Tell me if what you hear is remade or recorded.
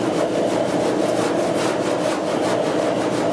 recorded